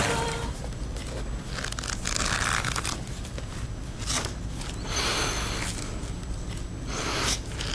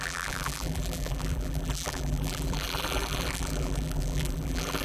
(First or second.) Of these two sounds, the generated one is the second